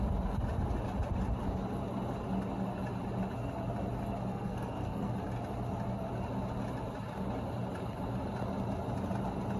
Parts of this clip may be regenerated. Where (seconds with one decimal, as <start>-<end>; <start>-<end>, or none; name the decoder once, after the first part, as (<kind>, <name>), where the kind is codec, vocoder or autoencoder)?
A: 4.3-5.1 (codec, SNAC)